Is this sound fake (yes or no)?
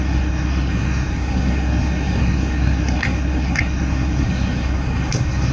yes